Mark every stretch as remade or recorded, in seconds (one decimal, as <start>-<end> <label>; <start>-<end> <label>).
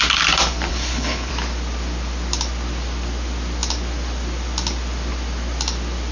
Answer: 0.0-0.7 recorded; 0.7-1.3 remade; 1.3-6.1 recorded